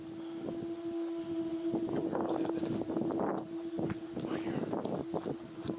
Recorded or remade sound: recorded